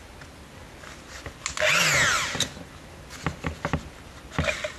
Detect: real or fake real